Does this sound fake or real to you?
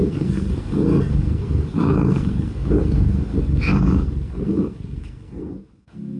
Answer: fake